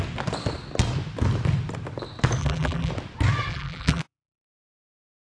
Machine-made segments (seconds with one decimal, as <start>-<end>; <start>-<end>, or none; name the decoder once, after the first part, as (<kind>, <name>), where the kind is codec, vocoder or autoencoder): 2.4-2.9 (vocoder, BigVGAN v2); 3.5-4.6